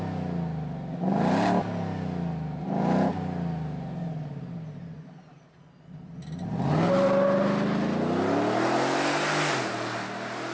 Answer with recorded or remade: recorded